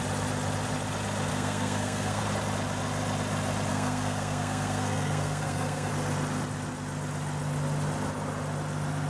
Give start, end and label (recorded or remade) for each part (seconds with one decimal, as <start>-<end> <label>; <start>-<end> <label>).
0.0-1.3 recorded; 1.3-2.2 remade; 2.2-3.7 recorded; 3.7-5.9 remade; 5.9-9.1 recorded